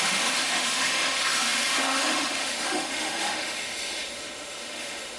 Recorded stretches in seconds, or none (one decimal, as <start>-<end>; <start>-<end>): none